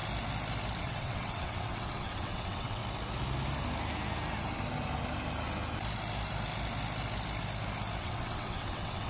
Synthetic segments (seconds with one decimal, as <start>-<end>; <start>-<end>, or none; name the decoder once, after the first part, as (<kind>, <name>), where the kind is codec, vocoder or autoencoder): 0.8-2.8 (vocoder, WaveNeXt); 8.0-9.1

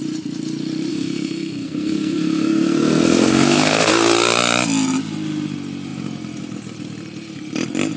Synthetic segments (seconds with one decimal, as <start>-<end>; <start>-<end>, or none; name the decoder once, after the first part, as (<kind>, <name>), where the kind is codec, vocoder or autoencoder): 0.9-3.9 (codec, SNAC)

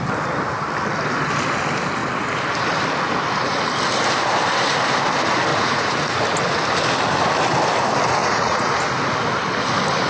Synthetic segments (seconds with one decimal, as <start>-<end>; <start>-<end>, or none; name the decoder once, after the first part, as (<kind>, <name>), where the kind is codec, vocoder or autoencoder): 5.5-6.2 (vocoder, Vocos); 8.2-8.7

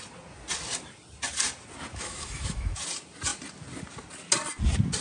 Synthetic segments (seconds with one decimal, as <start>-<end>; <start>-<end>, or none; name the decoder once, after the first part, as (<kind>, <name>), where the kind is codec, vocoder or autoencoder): 1.9-2.8 (autoencoder, DAC-VAE)

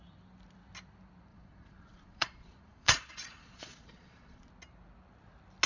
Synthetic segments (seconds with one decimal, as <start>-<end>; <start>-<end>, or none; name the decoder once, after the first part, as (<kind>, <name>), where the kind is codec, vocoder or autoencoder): 1.3-4.5 (vocoder, Vocos)

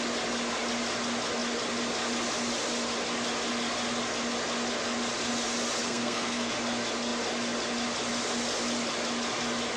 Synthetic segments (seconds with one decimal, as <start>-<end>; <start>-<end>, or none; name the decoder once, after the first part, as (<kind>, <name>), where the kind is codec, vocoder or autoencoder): 5.8-6.5 (codec, SNAC)

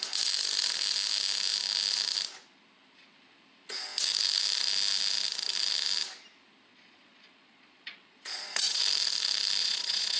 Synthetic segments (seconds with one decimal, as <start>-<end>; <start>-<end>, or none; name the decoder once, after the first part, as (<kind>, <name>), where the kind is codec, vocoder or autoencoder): 6.7-8.8 (vocoder, Vocos); 9.6-10.2